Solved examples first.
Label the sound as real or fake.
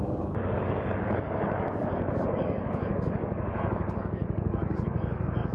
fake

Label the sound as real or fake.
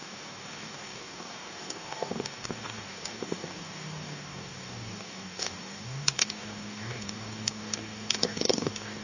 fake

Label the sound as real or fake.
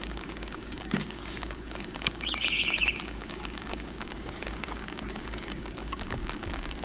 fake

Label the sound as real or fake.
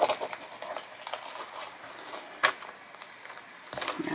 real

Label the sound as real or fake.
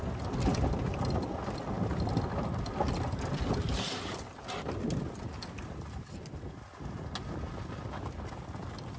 real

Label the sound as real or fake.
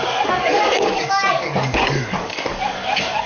fake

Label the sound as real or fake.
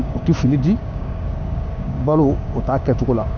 fake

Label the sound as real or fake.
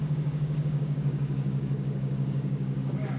fake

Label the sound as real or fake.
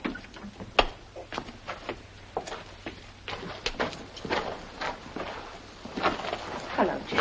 real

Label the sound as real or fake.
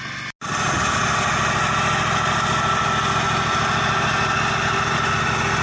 real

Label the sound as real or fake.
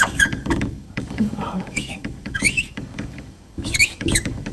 fake